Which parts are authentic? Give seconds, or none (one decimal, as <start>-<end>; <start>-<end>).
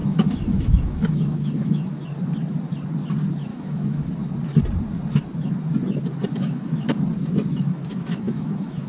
1.9-3.5; 4.0-6.2; 6.9-7.5